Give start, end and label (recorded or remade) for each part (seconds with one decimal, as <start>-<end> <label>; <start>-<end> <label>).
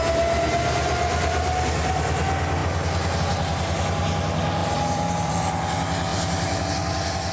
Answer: 0.0-4.6 recorded; 4.6-5.3 remade; 5.3-6.1 recorded; 6.1-6.7 remade; 6.7-7.3 recorded